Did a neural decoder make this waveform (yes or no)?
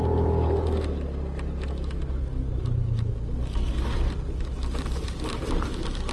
no